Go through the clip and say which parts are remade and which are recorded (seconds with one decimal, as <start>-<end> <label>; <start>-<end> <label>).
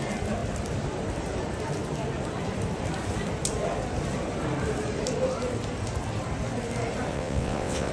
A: 0.0-7.1 recorded; 7.1-7.9 remade